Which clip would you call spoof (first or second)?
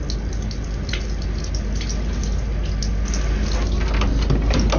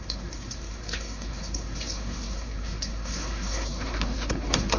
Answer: second